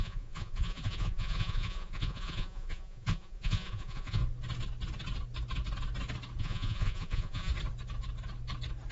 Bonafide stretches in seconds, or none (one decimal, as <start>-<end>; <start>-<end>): 4.2-6.4; 7.5-8.9